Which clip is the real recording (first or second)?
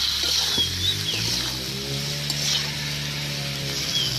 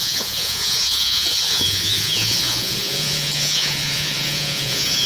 first